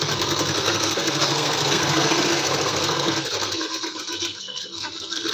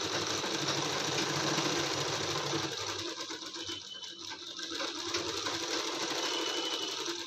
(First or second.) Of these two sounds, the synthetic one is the first